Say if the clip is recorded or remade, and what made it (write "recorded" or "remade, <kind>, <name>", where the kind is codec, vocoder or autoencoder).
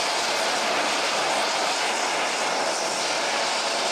recorded